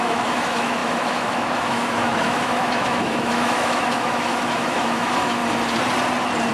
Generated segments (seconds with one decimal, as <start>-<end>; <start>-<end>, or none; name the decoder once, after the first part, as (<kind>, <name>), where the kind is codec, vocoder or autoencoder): 0.0-5.4 (autoencoder, DAC-VAE)

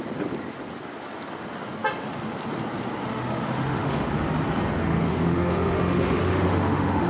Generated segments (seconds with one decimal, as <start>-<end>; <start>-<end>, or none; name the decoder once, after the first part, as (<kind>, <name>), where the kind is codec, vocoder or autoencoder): 3.0-4.1 (autoencoder, DAC-VAE); 4.8-7.1

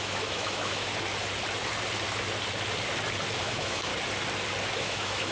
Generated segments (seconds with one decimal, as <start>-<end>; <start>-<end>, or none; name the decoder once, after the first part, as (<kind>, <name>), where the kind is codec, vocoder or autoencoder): 0.0-0.9 (autoencoder, DAC-VAE); 3.4-3.9; 4.8-5.3

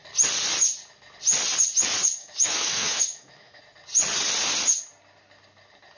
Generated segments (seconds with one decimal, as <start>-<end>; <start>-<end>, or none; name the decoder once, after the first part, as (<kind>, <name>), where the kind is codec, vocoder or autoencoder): 2.2-3.6 (autoencoder, DAC-VAE)

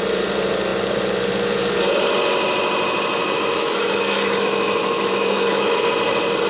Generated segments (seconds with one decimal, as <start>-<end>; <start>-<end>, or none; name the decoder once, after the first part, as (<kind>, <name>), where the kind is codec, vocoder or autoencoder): 3.2-5.9 (autoencoder, DAC-VAE)

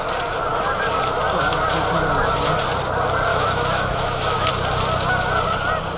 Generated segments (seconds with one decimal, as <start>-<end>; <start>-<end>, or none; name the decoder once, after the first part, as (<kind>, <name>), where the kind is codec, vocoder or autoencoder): 3.3-4.5 (autoencoder, DAC-VAE)